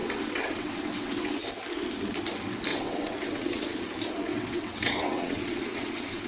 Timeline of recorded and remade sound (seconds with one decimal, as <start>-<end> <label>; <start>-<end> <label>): 0.0-1.4 remade; 1.4-2.7 recorded; 2.7-3.8 remade; 3.8-4.3 recorded; 4.3-6.3 remade